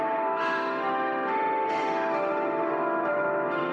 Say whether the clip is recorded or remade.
remade